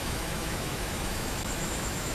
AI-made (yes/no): yes